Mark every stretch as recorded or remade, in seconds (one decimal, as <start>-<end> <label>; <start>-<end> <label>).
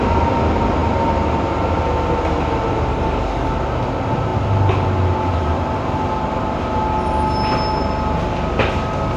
0.0-2.9 recorded; 2.9-3.5 remade; 3.5-9.2 recorded